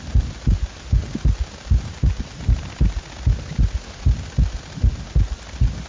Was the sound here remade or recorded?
recorded